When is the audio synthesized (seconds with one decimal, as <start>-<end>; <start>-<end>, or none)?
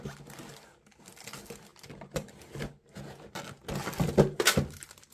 none